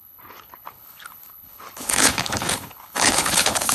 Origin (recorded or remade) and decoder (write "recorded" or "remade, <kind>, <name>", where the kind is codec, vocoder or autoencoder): remade, codec, HILCodec